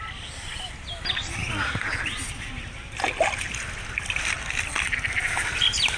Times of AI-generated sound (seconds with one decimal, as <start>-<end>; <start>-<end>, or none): none